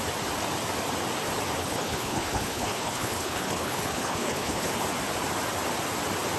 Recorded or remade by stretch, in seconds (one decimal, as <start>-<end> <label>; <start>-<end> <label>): 0.0-1.6 recorded; 1.6-4.7 remade; 4.7-6.4 recorded